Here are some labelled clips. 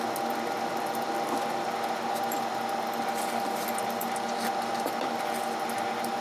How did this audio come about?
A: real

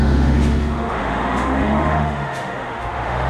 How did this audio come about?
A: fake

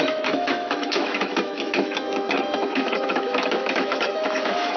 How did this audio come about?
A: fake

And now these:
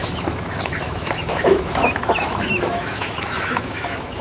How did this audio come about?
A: fake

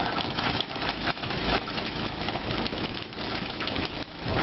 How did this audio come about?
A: fake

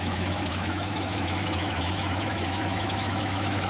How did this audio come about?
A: fake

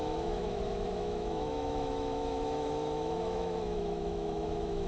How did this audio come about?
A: fake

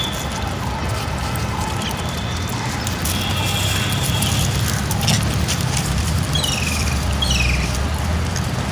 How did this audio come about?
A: real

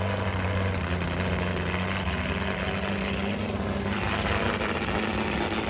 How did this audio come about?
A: real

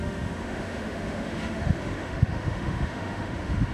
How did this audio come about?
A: fake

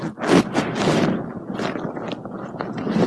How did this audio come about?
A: real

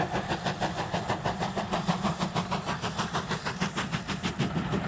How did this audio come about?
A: real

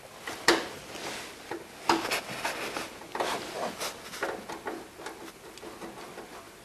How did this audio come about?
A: real